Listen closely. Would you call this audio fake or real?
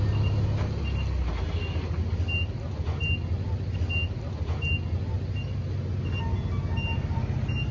real